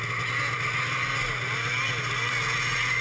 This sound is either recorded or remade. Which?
recorded